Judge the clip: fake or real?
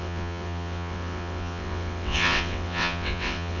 fake